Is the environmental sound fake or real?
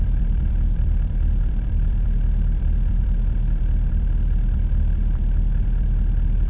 fake